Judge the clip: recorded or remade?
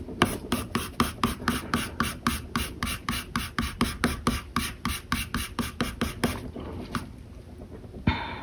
recorded